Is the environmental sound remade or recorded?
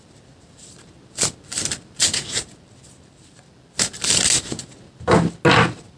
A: recorded